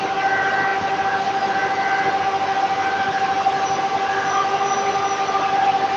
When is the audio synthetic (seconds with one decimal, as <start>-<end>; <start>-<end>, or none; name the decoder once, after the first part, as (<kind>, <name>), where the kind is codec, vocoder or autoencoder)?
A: none